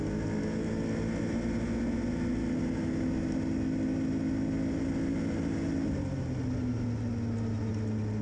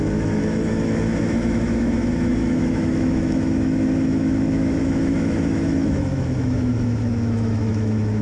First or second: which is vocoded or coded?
second